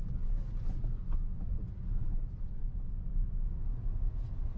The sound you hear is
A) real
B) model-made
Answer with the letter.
A